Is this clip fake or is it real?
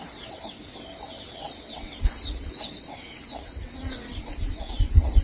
fake